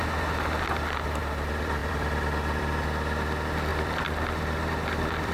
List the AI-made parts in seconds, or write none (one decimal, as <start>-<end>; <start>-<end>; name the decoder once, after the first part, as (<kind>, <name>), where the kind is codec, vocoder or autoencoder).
1.8-2.6 (vocoder, BigVGAN v2); 3.7-5.3